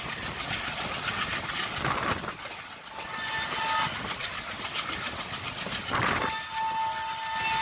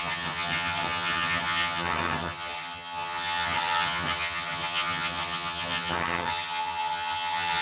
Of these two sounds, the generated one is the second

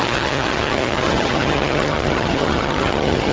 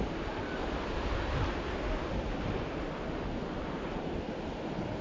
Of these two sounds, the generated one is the first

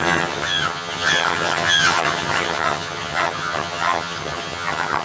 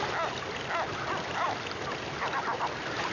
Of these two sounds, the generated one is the first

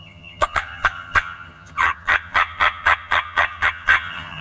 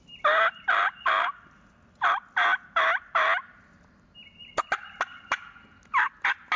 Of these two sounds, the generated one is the first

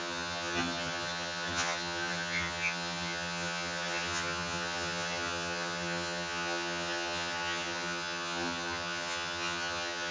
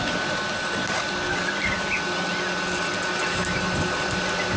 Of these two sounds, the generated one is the first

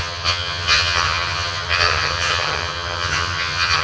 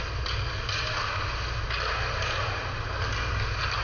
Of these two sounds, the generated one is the first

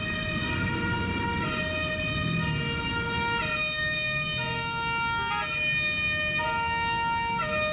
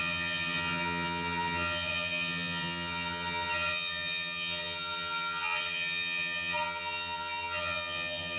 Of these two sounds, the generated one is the second